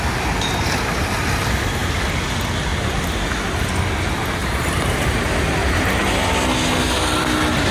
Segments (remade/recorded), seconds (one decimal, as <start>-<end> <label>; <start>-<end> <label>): 0.0-4.4 recorded; 4.4-6.0 remade; 6.0-7.7 recorded